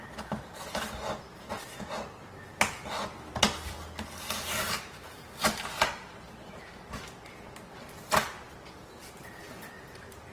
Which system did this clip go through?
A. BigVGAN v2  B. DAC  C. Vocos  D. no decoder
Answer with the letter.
D